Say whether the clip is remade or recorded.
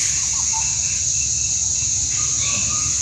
recorded